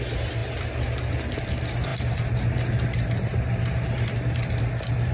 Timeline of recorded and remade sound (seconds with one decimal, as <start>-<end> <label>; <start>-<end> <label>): 0.0-5.1 recorded